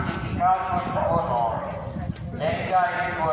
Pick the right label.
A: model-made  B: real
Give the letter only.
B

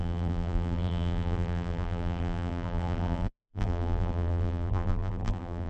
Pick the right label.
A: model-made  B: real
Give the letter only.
A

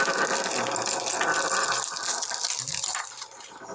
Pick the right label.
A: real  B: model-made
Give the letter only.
A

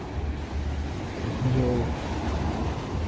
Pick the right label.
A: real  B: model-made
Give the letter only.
A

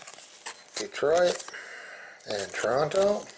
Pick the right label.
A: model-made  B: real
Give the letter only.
B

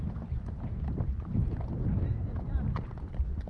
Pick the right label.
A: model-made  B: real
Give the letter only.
B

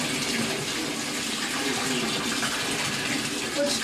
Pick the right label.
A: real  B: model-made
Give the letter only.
A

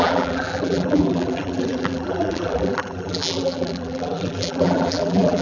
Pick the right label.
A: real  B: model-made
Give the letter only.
B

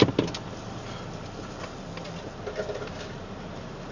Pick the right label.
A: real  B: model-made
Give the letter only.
A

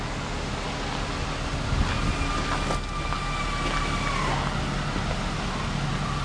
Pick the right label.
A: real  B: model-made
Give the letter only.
A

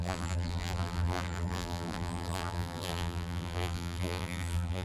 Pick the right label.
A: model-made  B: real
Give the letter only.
A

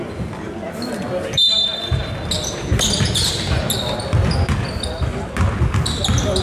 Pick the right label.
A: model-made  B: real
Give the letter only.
B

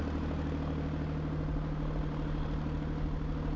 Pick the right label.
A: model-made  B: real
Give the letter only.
B